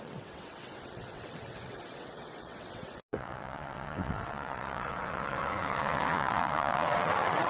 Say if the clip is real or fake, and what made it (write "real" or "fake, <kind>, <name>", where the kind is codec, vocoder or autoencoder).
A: fake, vocoder, WaveNeXt